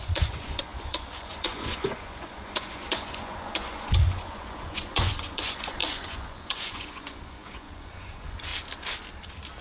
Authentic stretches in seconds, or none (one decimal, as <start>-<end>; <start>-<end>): 8.5-9.6